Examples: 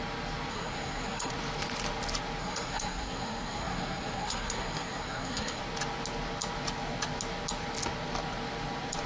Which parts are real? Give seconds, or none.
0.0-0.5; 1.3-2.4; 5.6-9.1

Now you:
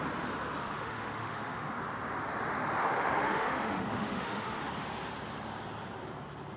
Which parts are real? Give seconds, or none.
0.0-0.6; 1.8-2.8; 4.6-6.6